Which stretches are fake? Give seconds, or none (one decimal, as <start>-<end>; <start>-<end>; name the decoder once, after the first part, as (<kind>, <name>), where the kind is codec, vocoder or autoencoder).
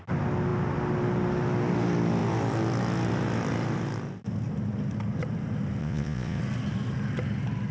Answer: 5.8-6.4 (vocoder, Vocos)